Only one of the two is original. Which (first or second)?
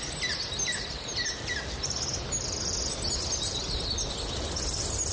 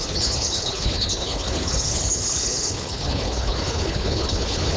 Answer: first